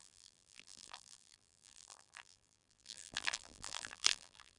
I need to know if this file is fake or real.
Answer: fake